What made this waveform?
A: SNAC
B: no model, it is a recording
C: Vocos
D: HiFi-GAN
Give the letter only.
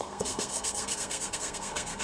A